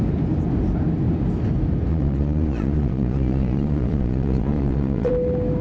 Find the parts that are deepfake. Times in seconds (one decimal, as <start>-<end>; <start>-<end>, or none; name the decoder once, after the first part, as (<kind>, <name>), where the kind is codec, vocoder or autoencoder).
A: 1.9-5.1 (vocoder, Vocos)